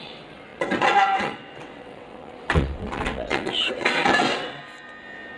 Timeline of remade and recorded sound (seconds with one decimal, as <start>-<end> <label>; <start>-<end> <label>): 0.0-4.6 remade; 4.6-5.4 recorded